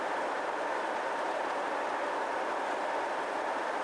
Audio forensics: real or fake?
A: real